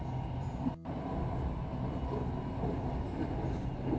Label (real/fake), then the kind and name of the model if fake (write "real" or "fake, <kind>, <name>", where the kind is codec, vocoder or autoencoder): real